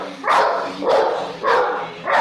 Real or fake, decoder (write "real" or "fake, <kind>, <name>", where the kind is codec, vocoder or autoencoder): fake, vocoder, BigVGAN v2